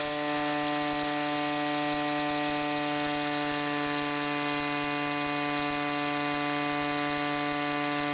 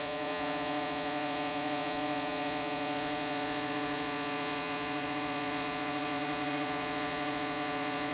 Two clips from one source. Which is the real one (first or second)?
first